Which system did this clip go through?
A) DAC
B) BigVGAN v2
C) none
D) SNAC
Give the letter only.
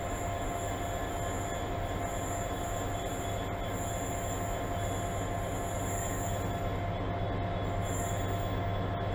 C